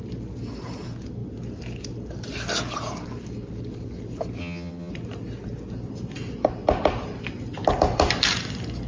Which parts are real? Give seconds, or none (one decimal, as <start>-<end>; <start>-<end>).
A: 0.0-4.4; 4.9-8.9

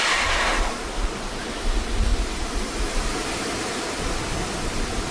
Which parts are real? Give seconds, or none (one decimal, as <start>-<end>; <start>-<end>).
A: 0.0-5.1

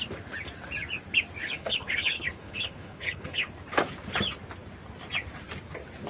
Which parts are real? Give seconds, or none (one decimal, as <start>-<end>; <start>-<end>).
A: 0.0-1.4; 3.5-6.1

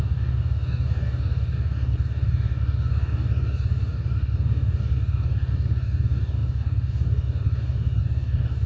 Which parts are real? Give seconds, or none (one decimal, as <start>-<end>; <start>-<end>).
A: none

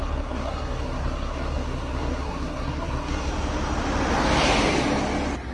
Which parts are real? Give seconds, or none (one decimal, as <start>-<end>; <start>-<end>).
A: 3.3-5.5

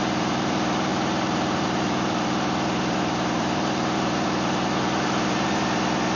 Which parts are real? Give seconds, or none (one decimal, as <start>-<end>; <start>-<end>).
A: none

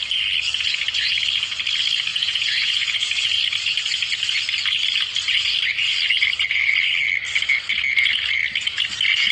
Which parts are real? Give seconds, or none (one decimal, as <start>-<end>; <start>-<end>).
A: 0.0-2.1; 3.4-9.3

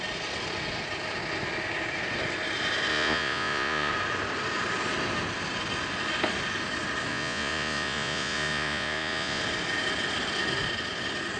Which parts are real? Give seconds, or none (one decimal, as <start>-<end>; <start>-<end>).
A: 0.0-2.9; 3.9-7.1; 9.4-11.4